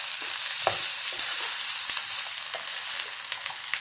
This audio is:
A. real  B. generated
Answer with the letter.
A